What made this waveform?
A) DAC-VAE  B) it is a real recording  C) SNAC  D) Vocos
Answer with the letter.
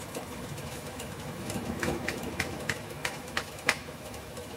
A